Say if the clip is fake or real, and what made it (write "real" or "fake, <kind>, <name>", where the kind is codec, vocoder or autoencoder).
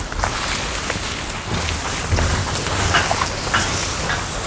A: real